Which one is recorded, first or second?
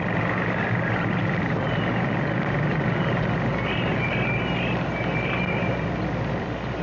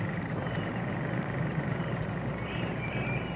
first